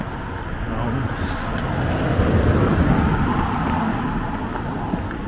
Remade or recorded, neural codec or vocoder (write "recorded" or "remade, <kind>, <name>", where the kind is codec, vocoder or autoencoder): recorded